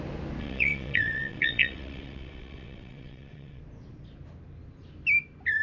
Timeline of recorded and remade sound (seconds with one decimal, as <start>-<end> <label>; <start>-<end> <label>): 0.0-0.4 recorded; 0.4-3.6 remade; 3.6-5.6 recorded

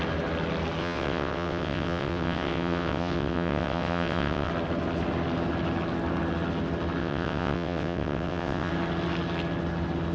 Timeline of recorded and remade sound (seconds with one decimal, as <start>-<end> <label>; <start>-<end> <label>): 0.0-0.8 recorded; 0.8-4.5 remade; 4.5-7.0 recorded; 7.0-8.7 remade; 8.7-10.1 recorded

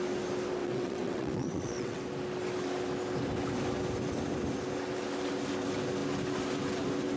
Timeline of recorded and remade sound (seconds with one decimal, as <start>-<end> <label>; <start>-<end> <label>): 0.0-0.6 recorded; 0.6-2.0 remade; 2.0-7.2 recorded